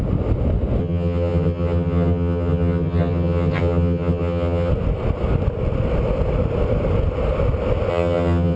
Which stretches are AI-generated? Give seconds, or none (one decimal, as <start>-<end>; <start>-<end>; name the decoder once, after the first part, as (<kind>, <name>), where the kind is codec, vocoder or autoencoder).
0.8-4.7 (vocoder, HiFi-GAN); 7.9-8.6